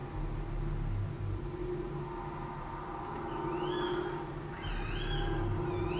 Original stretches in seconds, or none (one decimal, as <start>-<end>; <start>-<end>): 0.0-6.0